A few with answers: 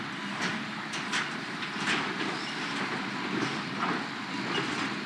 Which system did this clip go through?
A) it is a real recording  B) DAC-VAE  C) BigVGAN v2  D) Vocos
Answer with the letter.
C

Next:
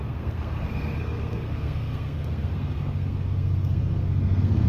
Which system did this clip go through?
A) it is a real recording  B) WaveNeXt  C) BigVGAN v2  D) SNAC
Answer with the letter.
D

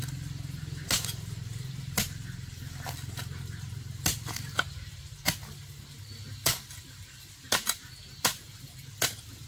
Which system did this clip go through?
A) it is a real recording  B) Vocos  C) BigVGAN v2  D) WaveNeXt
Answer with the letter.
A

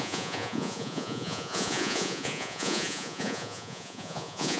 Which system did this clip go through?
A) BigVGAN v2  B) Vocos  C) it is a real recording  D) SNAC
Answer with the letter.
B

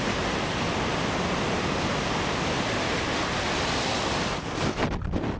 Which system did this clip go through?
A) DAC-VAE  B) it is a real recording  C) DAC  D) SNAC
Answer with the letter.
B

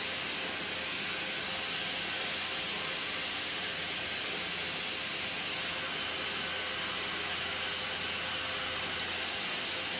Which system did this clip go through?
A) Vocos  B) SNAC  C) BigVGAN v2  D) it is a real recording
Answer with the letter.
D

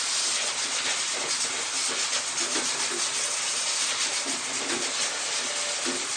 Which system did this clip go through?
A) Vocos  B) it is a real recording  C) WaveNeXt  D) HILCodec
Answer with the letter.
B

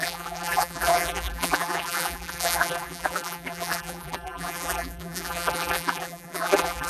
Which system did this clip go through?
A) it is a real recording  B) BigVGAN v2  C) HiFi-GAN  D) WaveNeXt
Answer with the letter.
B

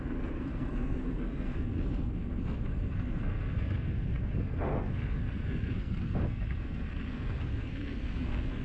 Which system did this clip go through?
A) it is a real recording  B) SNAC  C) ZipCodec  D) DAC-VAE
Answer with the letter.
B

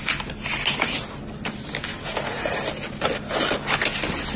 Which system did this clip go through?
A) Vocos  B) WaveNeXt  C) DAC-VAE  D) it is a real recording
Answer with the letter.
D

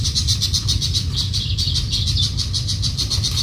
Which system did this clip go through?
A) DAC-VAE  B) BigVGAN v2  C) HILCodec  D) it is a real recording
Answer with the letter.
B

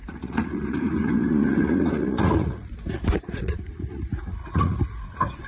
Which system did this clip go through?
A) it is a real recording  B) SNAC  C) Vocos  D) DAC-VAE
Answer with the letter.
C